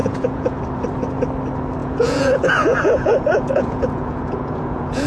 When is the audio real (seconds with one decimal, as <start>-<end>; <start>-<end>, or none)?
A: 0.6-1.8